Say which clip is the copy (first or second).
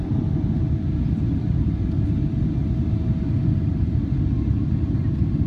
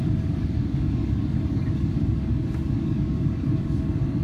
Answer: second